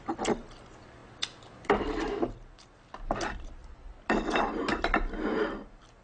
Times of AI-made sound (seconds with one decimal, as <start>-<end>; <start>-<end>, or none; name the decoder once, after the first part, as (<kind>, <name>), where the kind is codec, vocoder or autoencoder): 3.6-4.4 (vocoder, BigVGAN v2)